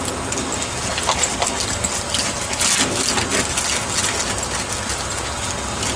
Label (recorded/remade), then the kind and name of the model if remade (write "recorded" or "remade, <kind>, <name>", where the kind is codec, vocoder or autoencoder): recorded